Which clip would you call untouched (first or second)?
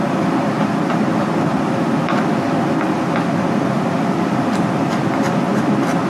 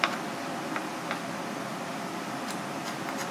second